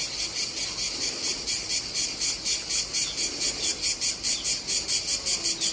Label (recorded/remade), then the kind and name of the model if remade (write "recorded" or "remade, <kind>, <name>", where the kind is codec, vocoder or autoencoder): recorded